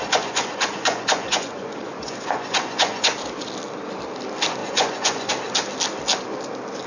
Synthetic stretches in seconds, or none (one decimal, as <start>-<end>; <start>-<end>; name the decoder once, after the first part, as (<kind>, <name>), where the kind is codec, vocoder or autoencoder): 0.0-3.1 (vocoder, Vocos); 4.6-5.3